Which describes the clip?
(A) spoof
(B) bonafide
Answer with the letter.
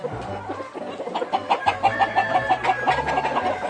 B